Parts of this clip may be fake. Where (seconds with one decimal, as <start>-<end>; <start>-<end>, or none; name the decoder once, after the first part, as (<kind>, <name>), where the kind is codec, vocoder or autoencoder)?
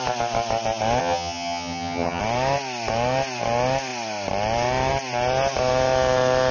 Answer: 1.0-2.2 (vocoder, HiFi-GAN)